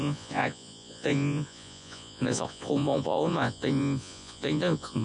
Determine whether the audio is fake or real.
fake